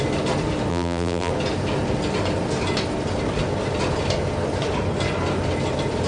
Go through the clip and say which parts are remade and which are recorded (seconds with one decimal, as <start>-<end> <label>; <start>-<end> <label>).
0.0-0.7 recorded; 0.7-1.3 remade; 1.3-6.1 recorded